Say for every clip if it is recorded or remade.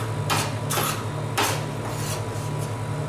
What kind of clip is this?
recorded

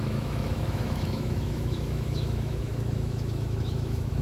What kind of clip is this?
remade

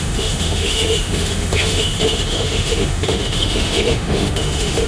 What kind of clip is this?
remade